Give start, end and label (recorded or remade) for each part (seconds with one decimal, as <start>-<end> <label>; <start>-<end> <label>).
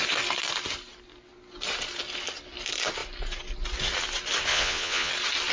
0.0-4.5 recorded; 4.5-5.1 remade; 5.1-5.5 recorded